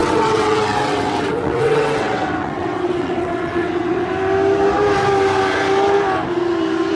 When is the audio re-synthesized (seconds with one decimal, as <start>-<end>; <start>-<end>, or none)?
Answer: 0.0-4.1